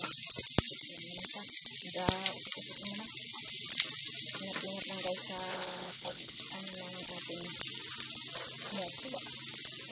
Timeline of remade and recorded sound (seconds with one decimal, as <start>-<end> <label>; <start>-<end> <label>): 0.0-5.5 recorded; 5.5-6.4 remade; 6.4-9.9 recorded